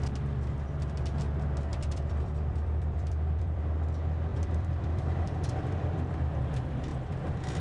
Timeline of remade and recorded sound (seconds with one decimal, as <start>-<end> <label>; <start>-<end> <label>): 0.0-1.7 recorded; 1.7-3.6 remade; 3.6-4.3 recorded; 4.3-6.3 remade; 6.3-6.9 recorded; 6.9-7.6 remade